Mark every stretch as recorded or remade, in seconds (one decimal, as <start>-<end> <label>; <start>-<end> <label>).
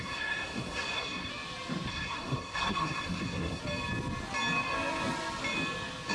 0.0-1.3 remade; 1.3-1.9 recorded; 1.9-3.6 remade; 3.6-6.1 recorded